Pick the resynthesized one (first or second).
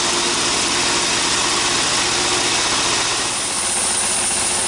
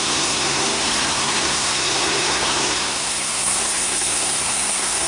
second